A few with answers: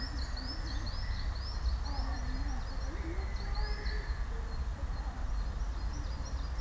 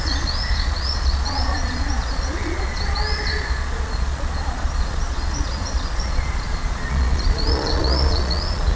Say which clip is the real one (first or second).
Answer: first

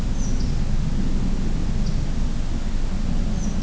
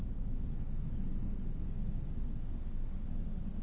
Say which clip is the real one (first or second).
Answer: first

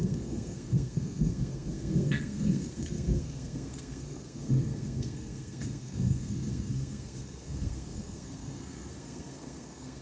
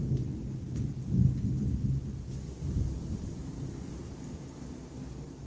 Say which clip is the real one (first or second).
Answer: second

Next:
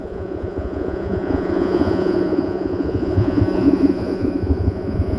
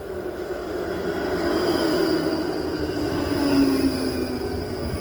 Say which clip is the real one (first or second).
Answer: second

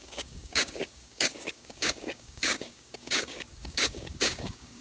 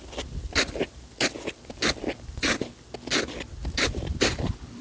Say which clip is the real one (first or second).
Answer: second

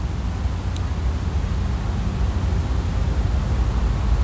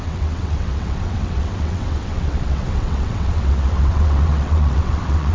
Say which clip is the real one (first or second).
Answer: first